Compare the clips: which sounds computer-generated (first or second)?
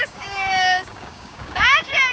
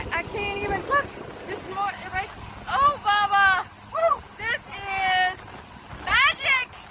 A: first